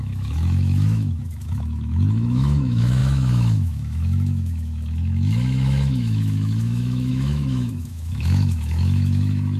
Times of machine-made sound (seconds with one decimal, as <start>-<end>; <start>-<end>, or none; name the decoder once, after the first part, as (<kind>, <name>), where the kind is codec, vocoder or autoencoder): 0.0-9.6 (autoencoder, DAC-VAE)